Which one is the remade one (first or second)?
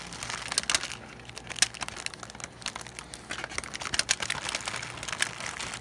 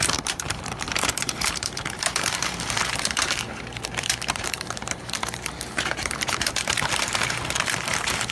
second